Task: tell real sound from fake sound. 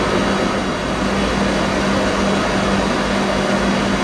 real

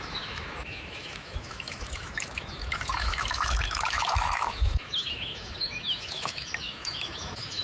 fake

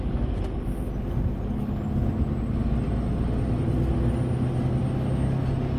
real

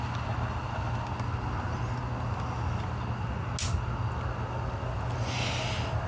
real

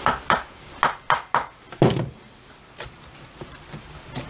real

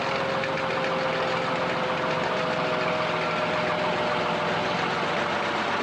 real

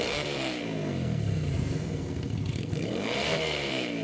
fake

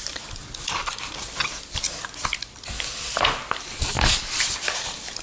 real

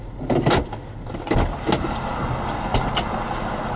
real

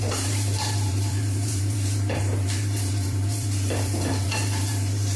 fake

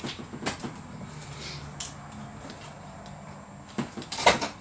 real